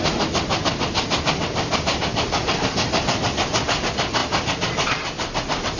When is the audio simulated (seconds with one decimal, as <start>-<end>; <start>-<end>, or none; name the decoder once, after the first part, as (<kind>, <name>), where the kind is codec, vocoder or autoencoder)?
none